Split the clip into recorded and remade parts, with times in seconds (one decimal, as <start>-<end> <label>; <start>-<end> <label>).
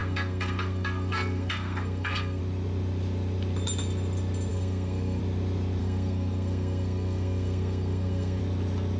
0.0-2.4 remade; 2.4-4.5 recorded; 4.5-5.2 remade; 5.2-5.8 recorded; 5.8-8.4 remade; 8.4-9.0 recorded